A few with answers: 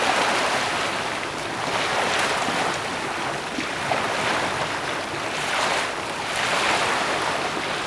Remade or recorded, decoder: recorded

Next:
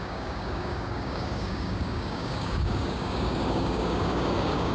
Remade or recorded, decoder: remade, codec, DAC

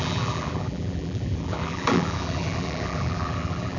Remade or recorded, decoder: remade, vocoder, BigVGAN v2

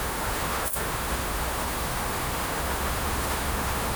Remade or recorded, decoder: remade, autoencoder, DAC-VAE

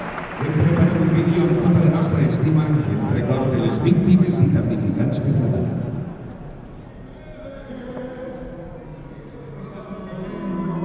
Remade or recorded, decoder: recorded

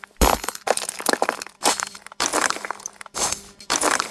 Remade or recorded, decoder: remade, vocoder, BigVGAN v2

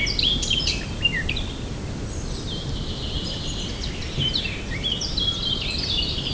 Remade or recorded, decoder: recorded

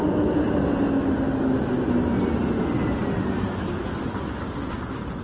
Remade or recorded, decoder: recorded